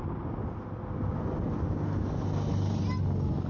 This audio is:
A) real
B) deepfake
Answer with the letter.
A